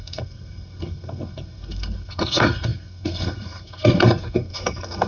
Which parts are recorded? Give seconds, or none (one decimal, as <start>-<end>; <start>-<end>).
none